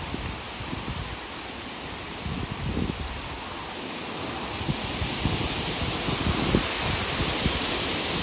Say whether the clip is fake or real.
fake